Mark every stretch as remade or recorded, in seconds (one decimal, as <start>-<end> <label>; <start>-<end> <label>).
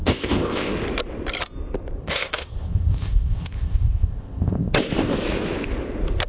0.0-0.7 remade; 0.7-2.0 recorded; 2.0-4.7 remade; 4.7-6.3 recorded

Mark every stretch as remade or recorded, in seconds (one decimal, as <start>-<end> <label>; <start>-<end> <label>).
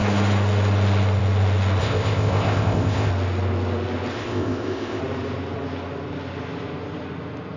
0.0-1.8 recorded; 1.8-3.1 remade; 3.1-4.1 recorded; 4.1-5.0 remade; 5.0-7.6 recorded